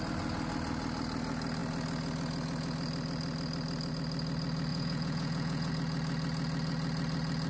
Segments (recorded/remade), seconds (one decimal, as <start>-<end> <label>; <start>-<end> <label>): 0.0-4.7 recorded; 4.7-5.7 remade; 5.7-7.5 recorded